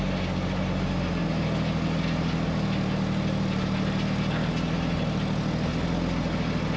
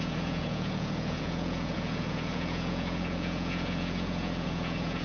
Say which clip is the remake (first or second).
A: second